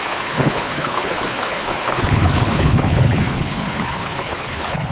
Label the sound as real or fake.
fake